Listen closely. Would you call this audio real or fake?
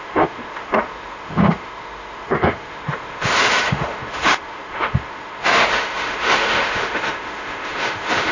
fake